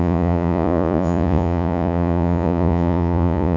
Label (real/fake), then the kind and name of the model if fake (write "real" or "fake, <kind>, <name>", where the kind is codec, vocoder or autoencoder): fake, vocoder, Vocos